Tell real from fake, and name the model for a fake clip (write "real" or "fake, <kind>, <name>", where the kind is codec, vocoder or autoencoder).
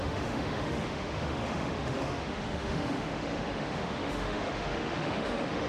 fake, autoencoder, DAC-VAE